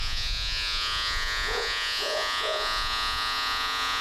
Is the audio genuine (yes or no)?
no